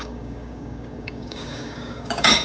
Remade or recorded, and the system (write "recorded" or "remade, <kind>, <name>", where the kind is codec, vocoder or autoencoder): remade, codec, DAC